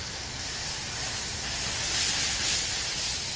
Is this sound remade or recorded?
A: recorded